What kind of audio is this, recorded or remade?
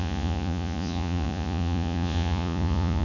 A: remade